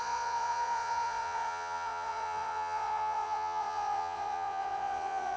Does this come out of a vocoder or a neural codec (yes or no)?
yes